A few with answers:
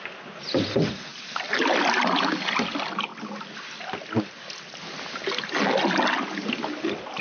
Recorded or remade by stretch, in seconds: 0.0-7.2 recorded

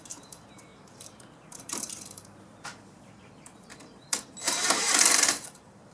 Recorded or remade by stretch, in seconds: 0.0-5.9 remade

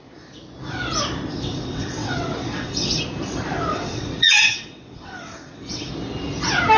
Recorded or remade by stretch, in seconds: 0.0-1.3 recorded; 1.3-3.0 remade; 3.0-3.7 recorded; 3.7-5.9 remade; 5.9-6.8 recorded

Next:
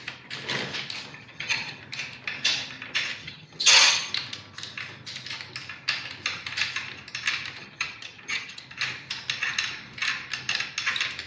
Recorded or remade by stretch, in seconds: 0.0-1.1 recorded; 1.1-1.8 remade; 1.8-3.2 recorded; 3.2-4.1 remade; 4.1-7.6 recorded; 7.6-8.6 remade; 8.6-11.3 recorded

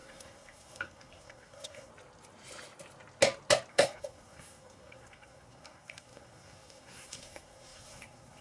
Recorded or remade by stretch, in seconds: 0.0-1.9 remade; 1.9-3.7 recorded; 3.7-8.4 remade